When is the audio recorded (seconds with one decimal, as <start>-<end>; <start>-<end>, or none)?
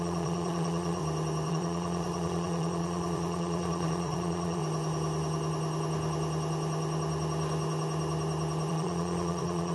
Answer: 1.0-1.5; 4.6-8.7